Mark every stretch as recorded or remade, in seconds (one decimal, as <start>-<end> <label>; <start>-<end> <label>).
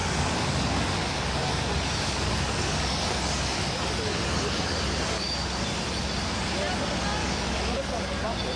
0.0-4.8 remade; 4.8-7.2 recorded; 7.2-8.0 remade; 8.0-8.6 recorded